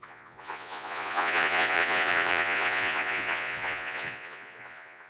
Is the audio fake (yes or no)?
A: yes